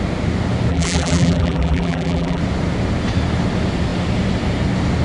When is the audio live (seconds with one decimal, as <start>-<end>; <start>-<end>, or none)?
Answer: 0.0-0.7; 2.4-5.0